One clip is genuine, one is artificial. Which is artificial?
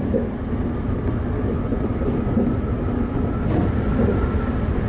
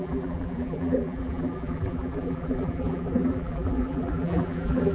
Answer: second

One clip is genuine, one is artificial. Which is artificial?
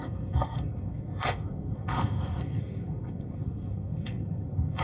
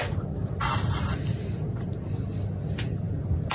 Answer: first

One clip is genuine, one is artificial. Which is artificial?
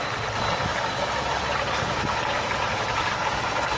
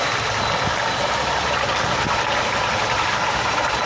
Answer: second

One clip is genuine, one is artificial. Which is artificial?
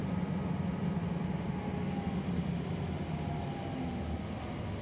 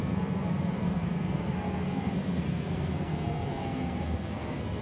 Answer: second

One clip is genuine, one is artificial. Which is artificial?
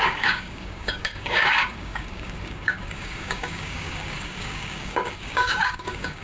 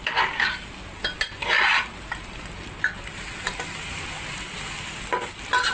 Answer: first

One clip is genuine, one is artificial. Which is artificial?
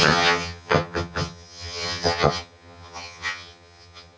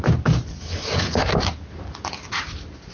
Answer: first